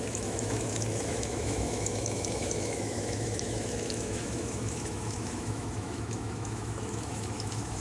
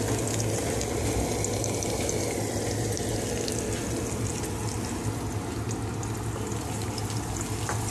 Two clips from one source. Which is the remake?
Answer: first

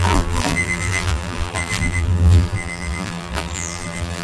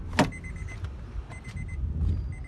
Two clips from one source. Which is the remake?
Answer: first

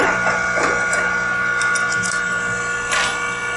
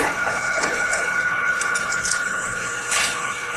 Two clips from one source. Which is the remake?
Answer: second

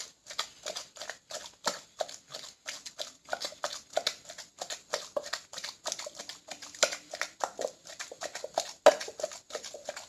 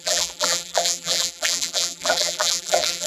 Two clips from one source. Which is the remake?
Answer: second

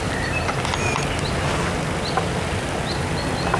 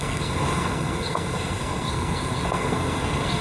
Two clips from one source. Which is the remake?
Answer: second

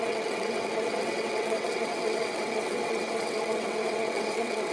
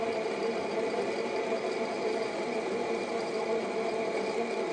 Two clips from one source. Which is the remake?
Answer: first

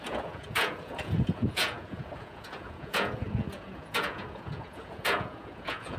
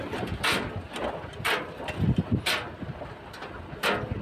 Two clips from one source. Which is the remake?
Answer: first